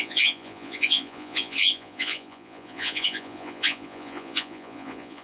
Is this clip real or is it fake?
fake